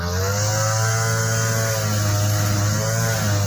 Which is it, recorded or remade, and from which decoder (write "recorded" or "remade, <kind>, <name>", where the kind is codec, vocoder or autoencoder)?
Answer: recorded